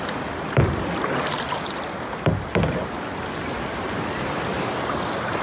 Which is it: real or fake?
real